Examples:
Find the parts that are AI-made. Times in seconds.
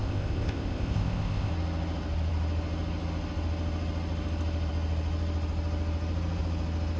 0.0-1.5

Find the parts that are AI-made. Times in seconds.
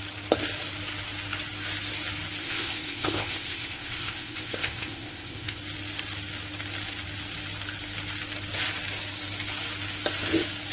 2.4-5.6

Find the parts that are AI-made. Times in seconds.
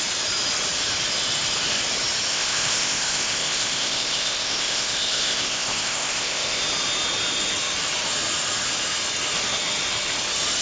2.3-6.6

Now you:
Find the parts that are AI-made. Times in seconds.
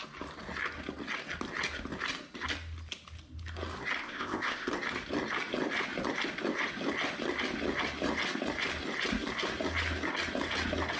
4.0-4.7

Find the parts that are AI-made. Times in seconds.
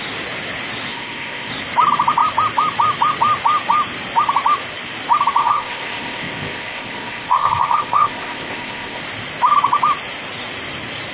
0.9-1.5; 5.4-9.0